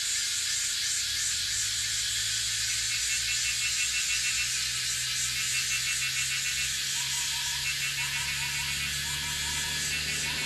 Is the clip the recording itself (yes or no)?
yes